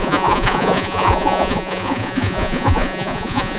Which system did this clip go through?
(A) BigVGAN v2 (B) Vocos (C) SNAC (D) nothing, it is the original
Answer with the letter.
B